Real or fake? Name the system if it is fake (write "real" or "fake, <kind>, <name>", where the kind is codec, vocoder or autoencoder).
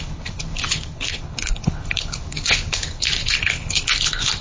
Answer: fake, codec, HILCodec